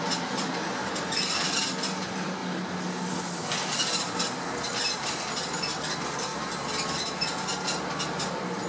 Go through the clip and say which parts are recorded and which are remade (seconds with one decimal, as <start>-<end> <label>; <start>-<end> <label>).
0.0-8.7 recorded